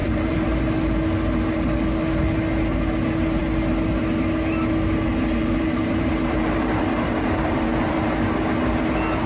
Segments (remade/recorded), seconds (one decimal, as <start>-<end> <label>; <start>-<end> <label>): 0.0-0.6 remade; 0.6-5.4 recorded; 5.4-8.3 remade; 8.3-9.3 recorded